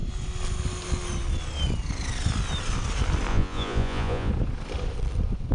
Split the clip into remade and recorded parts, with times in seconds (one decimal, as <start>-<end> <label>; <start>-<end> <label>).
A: 0.0-3.3 recorded; 3.3-4.3 remade; 4.3-5.5 recorded

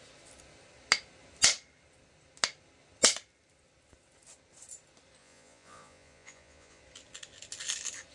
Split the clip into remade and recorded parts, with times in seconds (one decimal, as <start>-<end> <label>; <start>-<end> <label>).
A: 0.0-5.2 recorded; 5.2-6.8 remade; 6.8-8.1 recorded

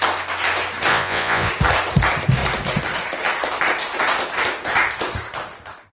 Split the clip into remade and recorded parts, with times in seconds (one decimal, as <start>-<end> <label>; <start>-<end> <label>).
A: 0.0-0.9 recorded; 0.9-1.5 remade; 1.5-6.0 recorded

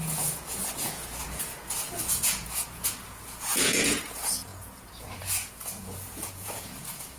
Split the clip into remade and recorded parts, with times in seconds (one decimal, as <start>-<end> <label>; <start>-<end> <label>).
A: 0.0-7.2 remade

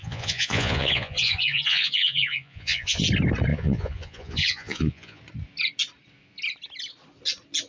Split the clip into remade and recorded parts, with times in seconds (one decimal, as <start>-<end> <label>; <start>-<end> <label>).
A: 0.0-3.0 remade; 3.0-3.5 recorded; 3.5-5.2 remade; 5.2-7.7 recorded

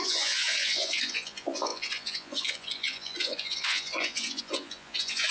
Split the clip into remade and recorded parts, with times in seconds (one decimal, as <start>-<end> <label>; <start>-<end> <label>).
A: 0.0-5.3 remade

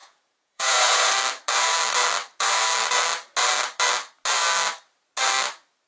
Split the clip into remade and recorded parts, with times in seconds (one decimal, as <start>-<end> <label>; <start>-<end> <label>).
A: 0.0-1.1 remade; 1.1-5.9 recorded